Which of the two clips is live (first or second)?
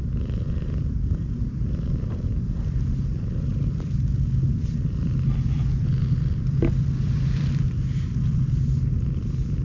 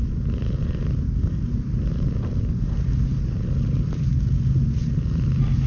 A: second